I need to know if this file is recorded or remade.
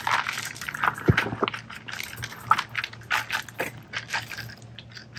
recorded